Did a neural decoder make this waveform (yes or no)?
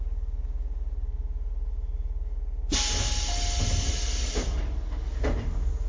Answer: no